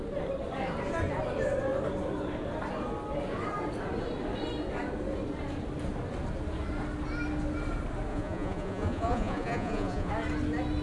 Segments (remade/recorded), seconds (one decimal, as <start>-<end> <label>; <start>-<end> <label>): 0.0-8.1 recorded; 8.1-10.1 remade; 10.1-10.8 recorded